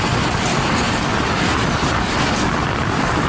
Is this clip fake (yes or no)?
no